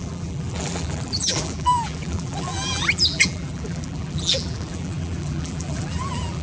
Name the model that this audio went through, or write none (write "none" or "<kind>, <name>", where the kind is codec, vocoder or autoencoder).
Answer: vocoder, BigVGAN v2